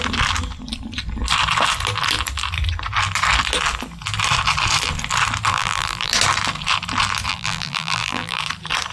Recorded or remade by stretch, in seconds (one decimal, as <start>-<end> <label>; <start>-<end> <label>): 0.0-5.5 recorded; 5.5-6.1 remade; 6.1-7.3 recorded; 7.3-8.4 remade; 8.4-8.9 recorded